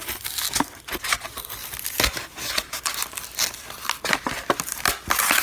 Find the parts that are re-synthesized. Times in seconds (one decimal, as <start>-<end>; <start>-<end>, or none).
1.6-4.8